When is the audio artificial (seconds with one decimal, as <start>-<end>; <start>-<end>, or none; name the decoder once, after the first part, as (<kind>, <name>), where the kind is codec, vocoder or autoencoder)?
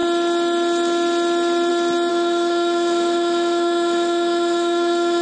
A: 2.1-5.2 (autoencoder, DAC-VAE)